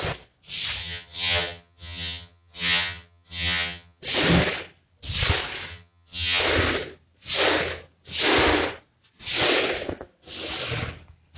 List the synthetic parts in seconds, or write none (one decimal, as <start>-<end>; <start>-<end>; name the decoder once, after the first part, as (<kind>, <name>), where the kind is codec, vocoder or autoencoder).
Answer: 0.8-4.0 (vocoder, HiFi-GAN); 5.7-6.4